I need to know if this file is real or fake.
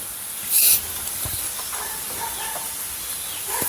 real